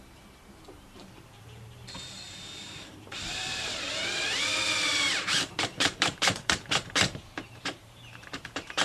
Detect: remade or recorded remade